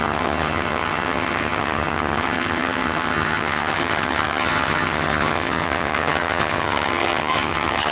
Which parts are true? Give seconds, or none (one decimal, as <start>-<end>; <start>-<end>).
none